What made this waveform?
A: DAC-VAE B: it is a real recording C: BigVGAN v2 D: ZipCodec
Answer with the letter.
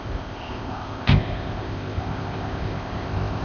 D